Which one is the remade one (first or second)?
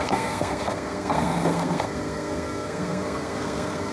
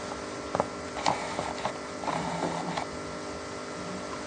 first